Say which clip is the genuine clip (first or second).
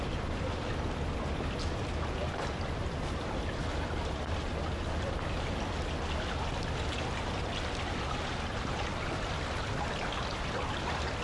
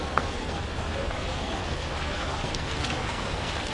first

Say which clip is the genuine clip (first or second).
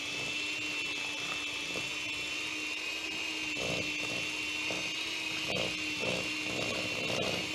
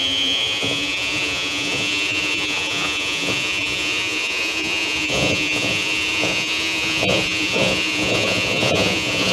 first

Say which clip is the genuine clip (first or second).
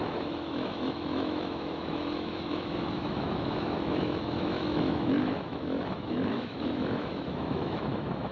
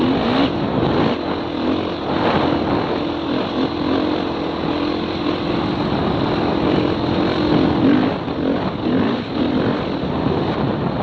second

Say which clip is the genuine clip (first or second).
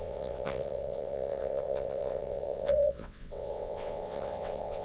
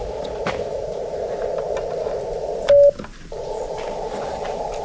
second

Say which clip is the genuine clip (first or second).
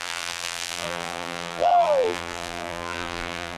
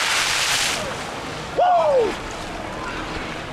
second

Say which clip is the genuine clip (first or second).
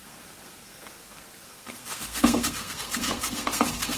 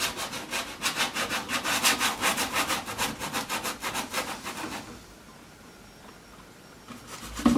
second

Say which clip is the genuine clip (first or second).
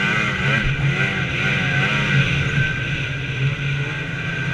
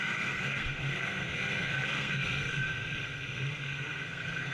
first